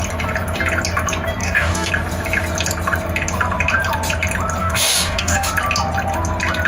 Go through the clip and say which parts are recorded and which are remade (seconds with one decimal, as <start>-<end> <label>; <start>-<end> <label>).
0.0-1.4 recorded; 1.4-1.9 remade; 1.9-4.6 recorded; 4.6-5.5 remade; 5.5-6.7 recorded